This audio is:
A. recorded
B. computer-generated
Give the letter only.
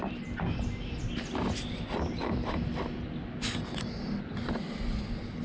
A